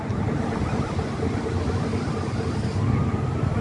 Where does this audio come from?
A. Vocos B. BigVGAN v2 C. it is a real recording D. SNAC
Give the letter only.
C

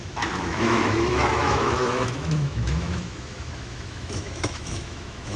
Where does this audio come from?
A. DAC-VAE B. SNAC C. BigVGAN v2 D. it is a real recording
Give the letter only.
A